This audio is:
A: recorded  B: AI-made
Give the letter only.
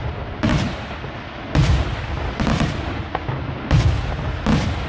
A